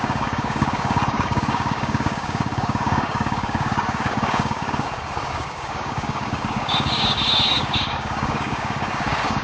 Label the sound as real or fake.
fake